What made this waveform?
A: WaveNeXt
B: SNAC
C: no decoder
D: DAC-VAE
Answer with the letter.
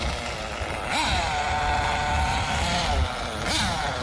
C